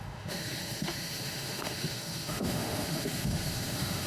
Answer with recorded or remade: remade